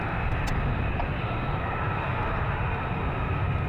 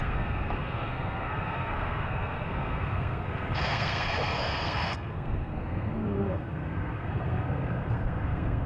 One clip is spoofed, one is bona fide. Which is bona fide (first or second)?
first